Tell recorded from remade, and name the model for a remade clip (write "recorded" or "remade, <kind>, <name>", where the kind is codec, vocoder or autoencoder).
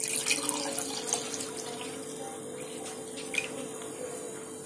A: recorded